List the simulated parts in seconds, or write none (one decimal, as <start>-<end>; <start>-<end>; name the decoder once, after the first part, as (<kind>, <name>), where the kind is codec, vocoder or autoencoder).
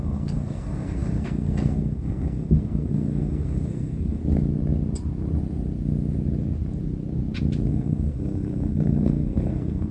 0.0-4.2 (codec, SNAC); 7.7-9.9